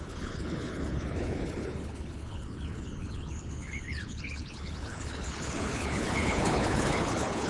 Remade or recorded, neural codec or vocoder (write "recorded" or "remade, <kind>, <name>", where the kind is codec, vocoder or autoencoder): remade, codec, HILCodec